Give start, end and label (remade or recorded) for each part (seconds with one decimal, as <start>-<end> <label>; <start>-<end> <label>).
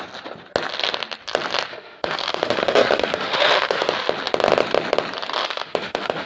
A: 0.0-1.7 recorded; 1.7-3.9 remade; 3.9-5.4 recorded; 5.4-6.3 remade